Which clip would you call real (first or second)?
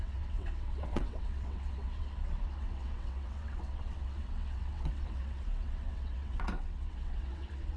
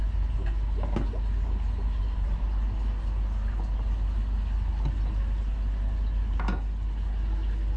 second